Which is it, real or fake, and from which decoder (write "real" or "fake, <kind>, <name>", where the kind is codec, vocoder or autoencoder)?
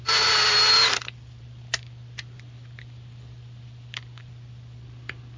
real